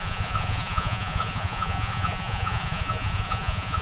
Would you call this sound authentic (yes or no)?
no